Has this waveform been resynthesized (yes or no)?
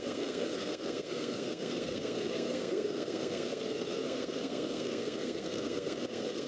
yes